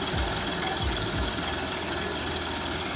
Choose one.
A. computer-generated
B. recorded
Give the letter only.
B